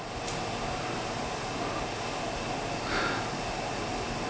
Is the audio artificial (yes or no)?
no